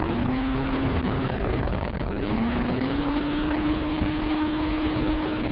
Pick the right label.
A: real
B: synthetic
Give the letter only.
B